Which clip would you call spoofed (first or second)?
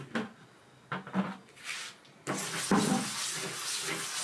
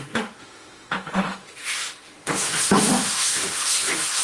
second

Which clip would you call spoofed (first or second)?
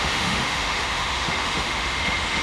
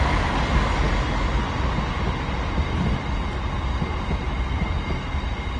first